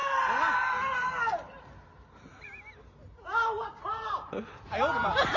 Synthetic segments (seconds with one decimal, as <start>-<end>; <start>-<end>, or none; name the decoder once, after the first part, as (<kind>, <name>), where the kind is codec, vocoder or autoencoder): none